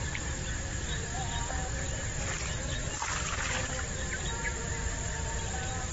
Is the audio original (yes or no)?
yes